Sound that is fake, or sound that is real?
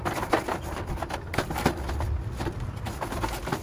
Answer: real